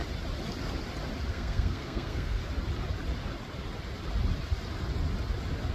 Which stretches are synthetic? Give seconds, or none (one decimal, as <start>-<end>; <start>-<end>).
1.3-2.4